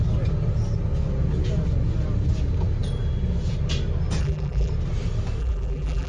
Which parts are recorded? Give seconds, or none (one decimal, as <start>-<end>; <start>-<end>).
0.0-4.2; 4.7-5.4